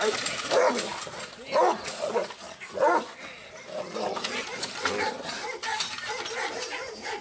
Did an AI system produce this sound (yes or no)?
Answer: no